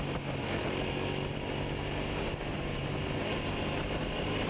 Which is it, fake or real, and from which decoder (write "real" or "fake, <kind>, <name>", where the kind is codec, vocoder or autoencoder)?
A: real